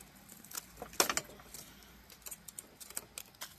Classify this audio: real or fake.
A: real